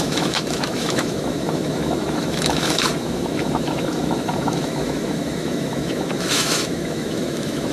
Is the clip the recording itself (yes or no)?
no